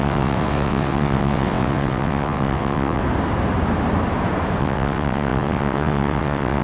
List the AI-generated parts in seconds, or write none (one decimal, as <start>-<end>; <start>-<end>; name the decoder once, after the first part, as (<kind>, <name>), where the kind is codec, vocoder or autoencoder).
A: 0.0-3.0 (vocoder, WaveNeXt); 4.6-6.6